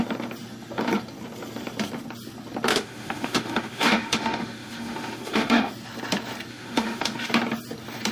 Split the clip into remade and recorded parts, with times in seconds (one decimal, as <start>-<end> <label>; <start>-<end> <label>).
0.0-2.7 recorded; 2.7-5.7 remade; 5.7-6.5 recorded; 6.5-7.3 remade; 7.3-8.1 recorded